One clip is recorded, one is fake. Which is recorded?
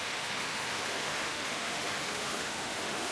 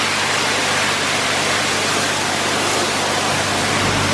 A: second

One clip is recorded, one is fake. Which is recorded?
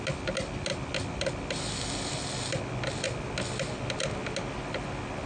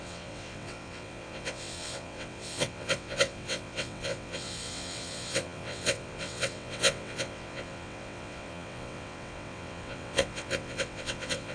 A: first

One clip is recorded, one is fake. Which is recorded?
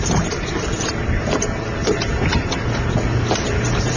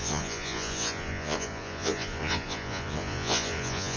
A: first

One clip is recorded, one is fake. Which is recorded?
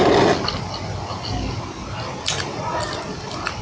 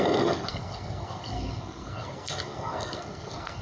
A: first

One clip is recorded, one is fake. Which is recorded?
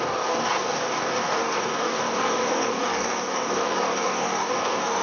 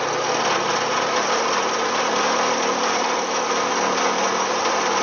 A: second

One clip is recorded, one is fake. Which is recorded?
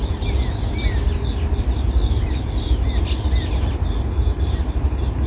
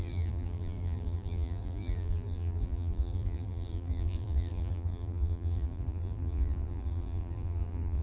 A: first